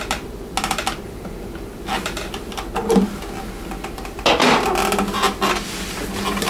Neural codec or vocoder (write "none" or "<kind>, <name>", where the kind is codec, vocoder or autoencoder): none